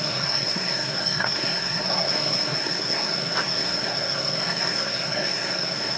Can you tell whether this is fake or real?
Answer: fake